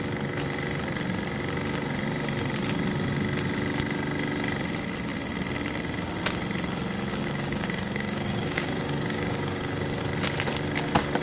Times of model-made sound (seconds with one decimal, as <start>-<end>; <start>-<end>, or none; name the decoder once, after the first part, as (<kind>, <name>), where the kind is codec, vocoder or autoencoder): 7.1-10.0 (codec, DAC)

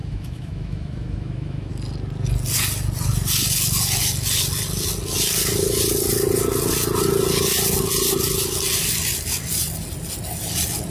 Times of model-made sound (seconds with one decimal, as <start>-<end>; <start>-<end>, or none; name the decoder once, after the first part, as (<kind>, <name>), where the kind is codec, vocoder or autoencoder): 0.0-1.7 (autoencoder, DAC-VAE)

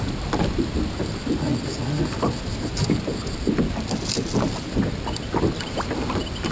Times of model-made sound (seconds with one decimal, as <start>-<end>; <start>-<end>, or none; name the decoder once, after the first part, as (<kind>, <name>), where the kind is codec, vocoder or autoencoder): none

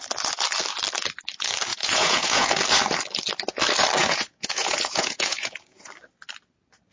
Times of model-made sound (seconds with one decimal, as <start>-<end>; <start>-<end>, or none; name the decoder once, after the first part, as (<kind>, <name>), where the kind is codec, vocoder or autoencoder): 1.7-2.5 (vocoder, Vocos); 4.0-5.9

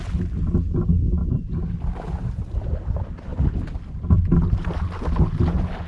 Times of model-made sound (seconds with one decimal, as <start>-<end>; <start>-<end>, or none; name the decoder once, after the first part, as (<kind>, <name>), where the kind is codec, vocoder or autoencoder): none

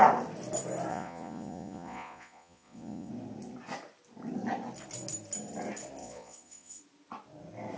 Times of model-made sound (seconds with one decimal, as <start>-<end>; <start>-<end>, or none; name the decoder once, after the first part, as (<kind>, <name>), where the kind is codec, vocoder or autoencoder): 0.9-3.1 (vocoder, Vocos); 6.0-6.8